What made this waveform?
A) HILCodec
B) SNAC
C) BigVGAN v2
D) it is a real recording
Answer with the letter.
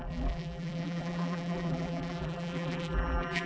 C